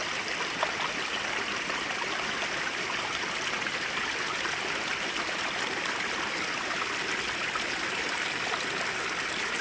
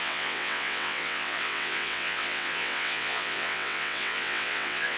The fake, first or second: second